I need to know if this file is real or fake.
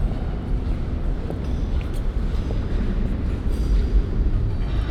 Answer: fake